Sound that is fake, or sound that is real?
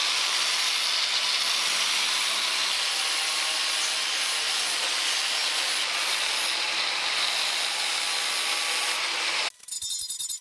real